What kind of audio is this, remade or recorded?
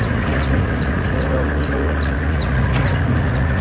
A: remade